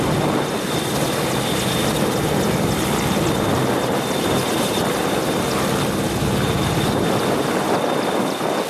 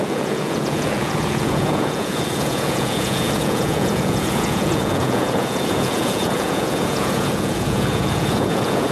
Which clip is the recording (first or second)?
first